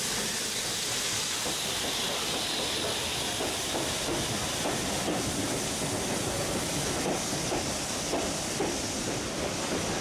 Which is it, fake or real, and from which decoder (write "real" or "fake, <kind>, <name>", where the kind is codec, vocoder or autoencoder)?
real